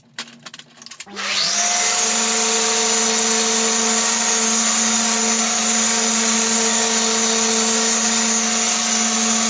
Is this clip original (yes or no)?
yes